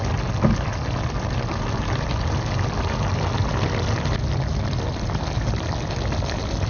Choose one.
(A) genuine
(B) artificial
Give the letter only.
B